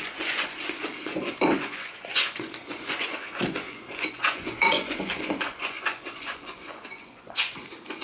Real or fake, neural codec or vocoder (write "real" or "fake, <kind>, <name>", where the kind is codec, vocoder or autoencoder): fake, vocoder, Vocos